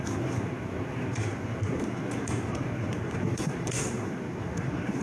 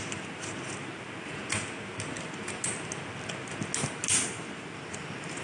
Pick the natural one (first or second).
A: second